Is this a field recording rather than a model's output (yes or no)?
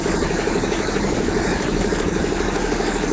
no